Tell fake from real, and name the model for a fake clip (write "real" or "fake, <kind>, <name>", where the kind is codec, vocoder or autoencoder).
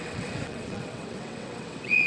fake, vocoder, WaveNeXt